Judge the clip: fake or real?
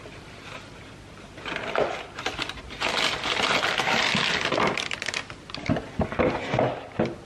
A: real